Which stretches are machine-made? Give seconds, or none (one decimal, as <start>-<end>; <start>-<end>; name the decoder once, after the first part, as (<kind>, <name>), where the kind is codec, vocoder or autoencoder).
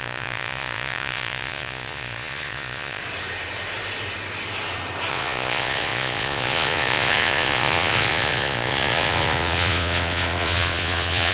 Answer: 0.0-3.0 (vocoder, Vocos); 5.1-11.3